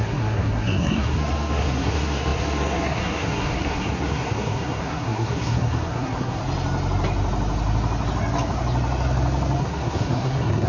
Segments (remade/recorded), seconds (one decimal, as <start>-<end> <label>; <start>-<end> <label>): 0.0-6.4 remade; 6.4-9.6 recorded; 9.6-10.7 remade